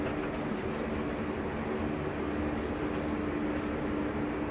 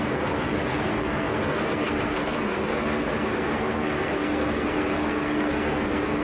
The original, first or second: first